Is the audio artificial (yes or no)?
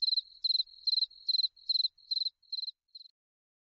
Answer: no